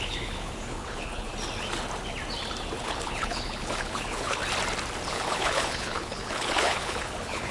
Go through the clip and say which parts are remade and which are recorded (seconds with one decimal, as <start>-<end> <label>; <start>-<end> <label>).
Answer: 0.0-1.3 remade; 1.3-2.8 recorded; 2.8-4.4 remade; 4.4-5.1 recorded; 5.1-7.5 remade